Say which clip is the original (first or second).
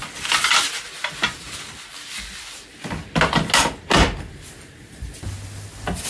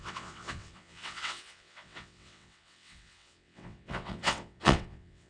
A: first